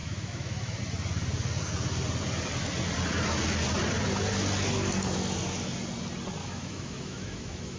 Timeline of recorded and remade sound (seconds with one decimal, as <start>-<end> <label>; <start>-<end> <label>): 0.0-0.8 remade; 0.8-6.4 recorded; 6.4-7.8 remade